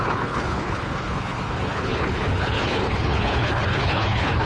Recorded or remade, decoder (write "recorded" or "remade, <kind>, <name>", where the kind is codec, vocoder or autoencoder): remade, codec, HILCodec